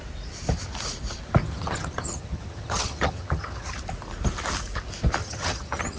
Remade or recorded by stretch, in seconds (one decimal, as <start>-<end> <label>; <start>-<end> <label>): 0.0-1.4 recorded; 1.4-3.7 remade; 3.7-5.2 recorded; 5.2-6.0 remade